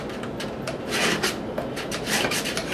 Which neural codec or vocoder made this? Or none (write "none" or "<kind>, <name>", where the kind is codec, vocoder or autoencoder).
none